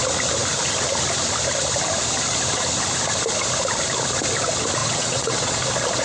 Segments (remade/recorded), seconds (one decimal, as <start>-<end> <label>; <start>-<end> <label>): 0.0-4.8 recorded; 4.8-5.6 remade; 5.6-6.0 recorded